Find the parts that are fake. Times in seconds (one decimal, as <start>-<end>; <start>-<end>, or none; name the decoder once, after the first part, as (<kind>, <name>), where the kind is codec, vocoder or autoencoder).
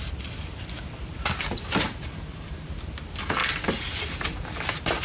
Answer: none